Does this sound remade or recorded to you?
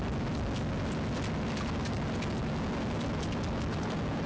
recorded